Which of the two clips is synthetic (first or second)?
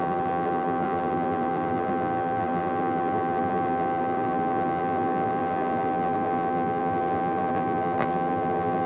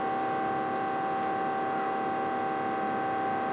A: first